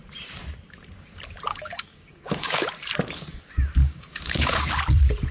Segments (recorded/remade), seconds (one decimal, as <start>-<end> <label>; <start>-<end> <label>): 0.0-1.5 recorded; 1.5-2.7 remade; 2.7-3.8 recorded; 3.8-4.7 remade; 4.7-5.3 recorded